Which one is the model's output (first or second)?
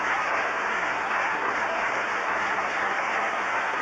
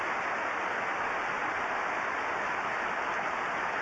first